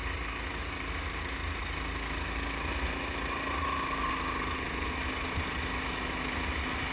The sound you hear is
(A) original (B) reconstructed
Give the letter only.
A